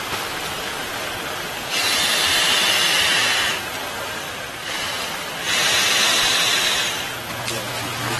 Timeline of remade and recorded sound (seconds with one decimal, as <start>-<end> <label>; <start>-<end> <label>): 0.0-4.6 recorded; 4.6-5.8 remade; 5.8-8.2 recorded